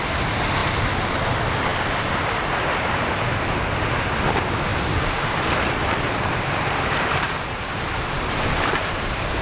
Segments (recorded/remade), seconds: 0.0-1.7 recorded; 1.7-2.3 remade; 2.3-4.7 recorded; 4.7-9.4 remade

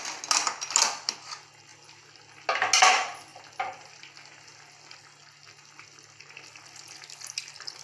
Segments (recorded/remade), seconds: 0.0-3.3 recorded; 3.3-5.0 remade; 5.0-7.8 recorded

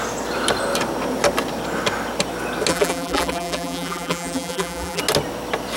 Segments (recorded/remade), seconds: 0.0-2.7 recorded; 2.7-5.0 remade; 5.0-5.8 recorded